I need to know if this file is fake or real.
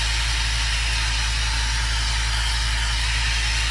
real